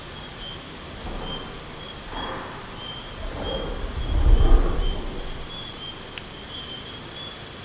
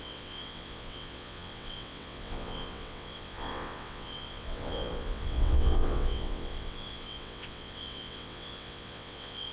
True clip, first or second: first